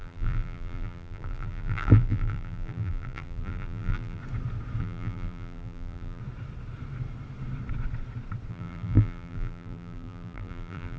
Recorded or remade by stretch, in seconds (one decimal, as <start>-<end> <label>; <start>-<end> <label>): 0.0-4.2 remade; 4.2-4.8 recorded; 4.8-6.2 remade; 6.2-8.5 recorded; 8.5-11.0 remade